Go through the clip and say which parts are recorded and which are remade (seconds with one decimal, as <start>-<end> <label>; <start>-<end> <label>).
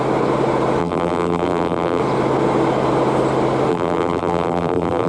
0.0-0.8 recorded; 0.8-2.0 remade; 2.0-3.7 recorded; 3.7-5.1 remade